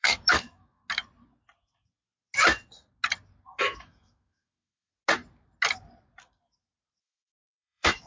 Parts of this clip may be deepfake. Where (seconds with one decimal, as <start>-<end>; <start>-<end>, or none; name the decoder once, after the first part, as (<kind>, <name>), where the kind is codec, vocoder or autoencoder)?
0.0-0.8 (autoencoder, DAC-VAE); 3.6-4.9; 7.0-8.1